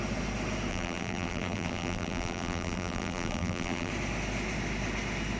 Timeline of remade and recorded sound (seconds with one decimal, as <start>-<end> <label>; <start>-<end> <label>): 0.0-0.7 recorded; 0.7-3.9 remade; 3.9-5.4 recorded